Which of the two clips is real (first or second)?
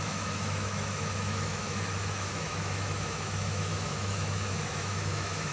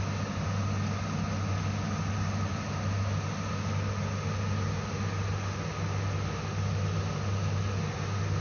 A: second